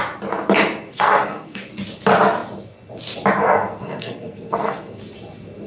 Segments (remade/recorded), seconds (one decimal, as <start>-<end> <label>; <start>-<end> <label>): 0.0-0.9 recorded; 0.9-1.7 remade; 1.7-3.4 recorded; 3.4-5.0 remade; 5.0-5.7 recorded